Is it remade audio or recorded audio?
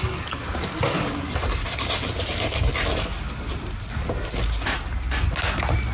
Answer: recorded